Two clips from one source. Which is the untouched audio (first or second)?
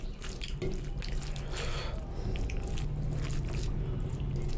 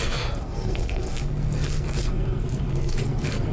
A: first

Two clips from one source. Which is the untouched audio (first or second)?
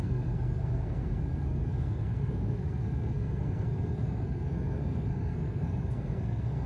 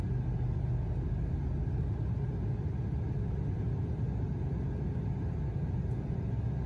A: second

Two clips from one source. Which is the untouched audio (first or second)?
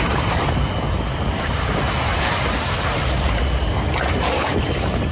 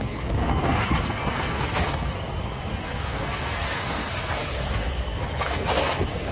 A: first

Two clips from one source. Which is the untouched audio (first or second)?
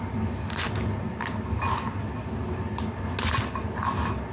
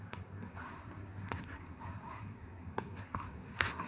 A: first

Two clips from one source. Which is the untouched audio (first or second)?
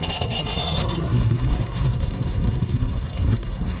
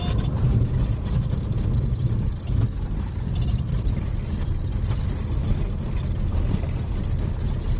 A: second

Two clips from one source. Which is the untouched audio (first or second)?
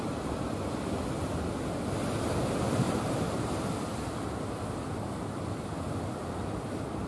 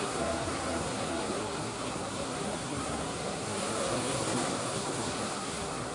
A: first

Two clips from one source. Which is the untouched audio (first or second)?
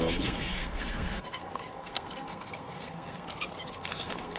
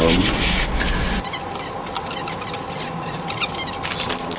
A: second